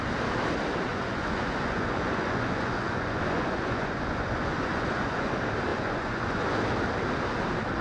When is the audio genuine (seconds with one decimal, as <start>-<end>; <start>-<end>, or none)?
0.0-0.9; 5.3-5.7; 6.6-7.8